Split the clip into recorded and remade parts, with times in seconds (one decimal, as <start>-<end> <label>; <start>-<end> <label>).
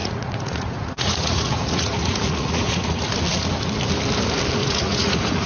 0.0-3.1 remade; 3.1-4.6 recorded; 4.6-5.5 remade